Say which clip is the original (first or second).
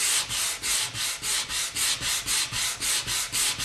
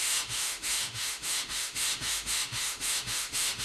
first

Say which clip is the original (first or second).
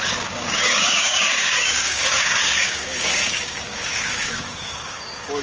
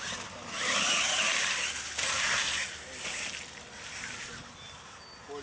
second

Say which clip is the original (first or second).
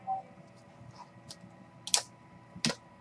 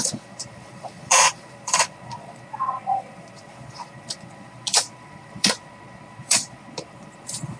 first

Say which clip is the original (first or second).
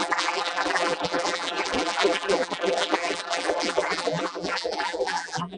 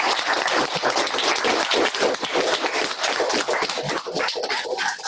second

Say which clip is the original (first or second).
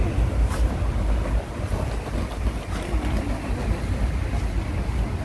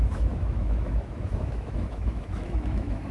first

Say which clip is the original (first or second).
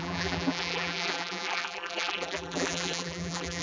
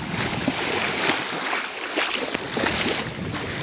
second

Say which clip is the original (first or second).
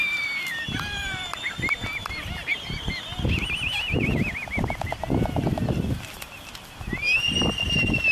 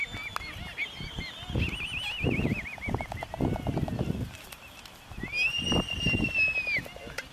second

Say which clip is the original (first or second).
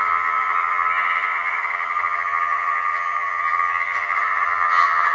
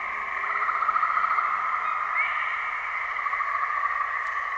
second